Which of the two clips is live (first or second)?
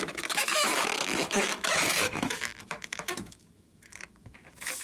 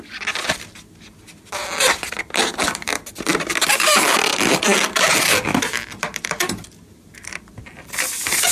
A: second